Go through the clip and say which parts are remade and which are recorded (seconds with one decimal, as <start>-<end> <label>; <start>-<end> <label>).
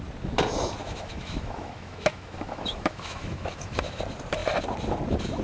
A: 0.0-0.8 recorded; 0.8-4.0 remade; 4.0-5.4 recorded